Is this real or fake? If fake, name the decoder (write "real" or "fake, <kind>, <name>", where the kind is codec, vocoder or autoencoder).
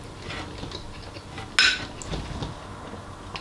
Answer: real